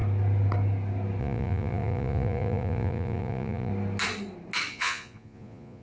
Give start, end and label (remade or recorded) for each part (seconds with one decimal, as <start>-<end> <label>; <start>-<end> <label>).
0.0-1.2 recorded; 1.2-3.7 remade; 3.7-4.7 recorded; 4.7-5.8 remade